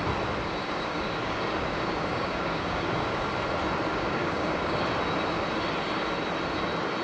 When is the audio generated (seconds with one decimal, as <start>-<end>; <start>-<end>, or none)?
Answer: 0.6-3.3; 3.9-4.8